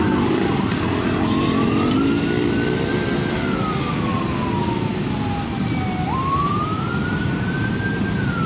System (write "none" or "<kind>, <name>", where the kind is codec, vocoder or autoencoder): none